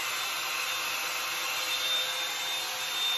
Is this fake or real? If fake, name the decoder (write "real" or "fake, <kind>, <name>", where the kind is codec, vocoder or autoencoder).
real